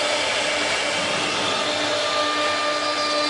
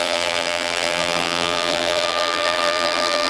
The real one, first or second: first